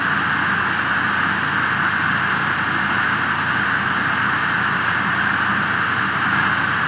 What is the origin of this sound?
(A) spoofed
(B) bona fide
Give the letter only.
B